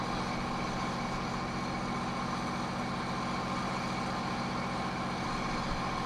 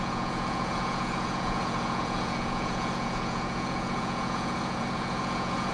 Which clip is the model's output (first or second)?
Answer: second